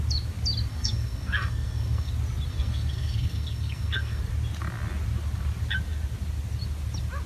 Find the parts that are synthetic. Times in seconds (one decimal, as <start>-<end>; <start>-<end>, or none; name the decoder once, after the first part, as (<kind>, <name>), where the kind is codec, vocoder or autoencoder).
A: 0.7-2.1 (codec, SNAC); 2.5-4.2